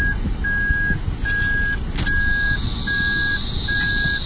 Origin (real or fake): real